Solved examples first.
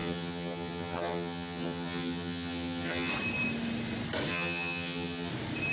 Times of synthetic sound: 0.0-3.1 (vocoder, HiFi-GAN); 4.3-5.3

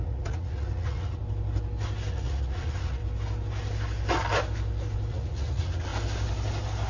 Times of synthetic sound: 0.0-1.2 (vocoder, Vocos); 2.1-3.0; 5.1-5.9

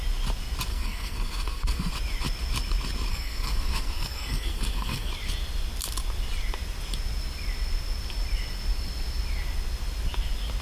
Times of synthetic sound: 0.7-1.9 (codec, SNAC); 3.1-5.1

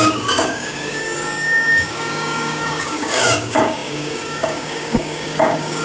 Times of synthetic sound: 0.0-5.8 (codec, DAC)

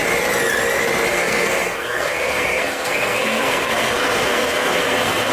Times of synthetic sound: 1.1-5.3 (codec, SNAC)

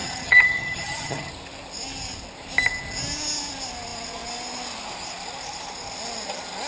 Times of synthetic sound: 0.0-1.3 (vocoder, HiFi-GAN)

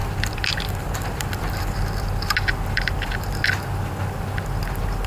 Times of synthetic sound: 0.0-3.1 (vocoder, BigVGAN v2)